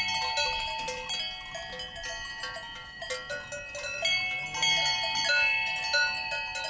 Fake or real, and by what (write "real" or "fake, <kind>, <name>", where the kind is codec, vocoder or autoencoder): real